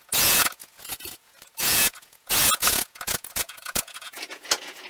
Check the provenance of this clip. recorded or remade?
remade